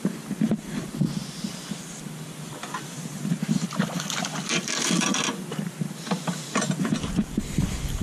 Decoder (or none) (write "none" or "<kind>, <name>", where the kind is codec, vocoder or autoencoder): vocoder, BigVGAN v2